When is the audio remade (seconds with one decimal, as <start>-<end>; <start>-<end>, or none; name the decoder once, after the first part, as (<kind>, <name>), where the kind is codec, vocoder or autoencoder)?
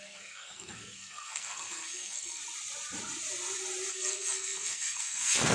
0.0-2.4 (codec, SNAC); 3.9-5.5